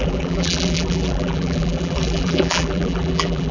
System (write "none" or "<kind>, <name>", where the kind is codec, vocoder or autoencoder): vocoder, BigVGAN v2